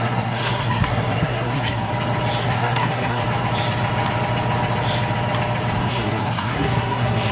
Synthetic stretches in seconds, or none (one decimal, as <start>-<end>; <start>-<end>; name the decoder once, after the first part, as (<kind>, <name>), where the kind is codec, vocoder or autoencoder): 0.0-1.9 (codec, SNAC); 2.4-3.2; 5.9-7.3